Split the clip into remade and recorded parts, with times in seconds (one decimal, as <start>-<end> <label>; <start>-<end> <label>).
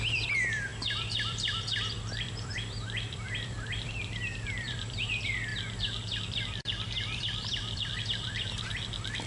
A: 0.0-5.5 remade; 5.5-6.2 recorded; 6.2-9.3 remade